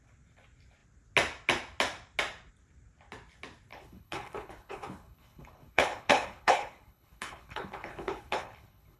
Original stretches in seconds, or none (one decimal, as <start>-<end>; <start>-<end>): 0.0-3.7